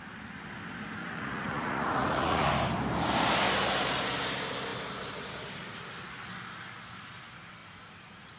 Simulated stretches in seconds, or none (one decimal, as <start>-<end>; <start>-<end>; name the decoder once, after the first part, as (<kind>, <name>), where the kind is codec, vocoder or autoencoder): 1.0-2.5 (vocoder, Vocos)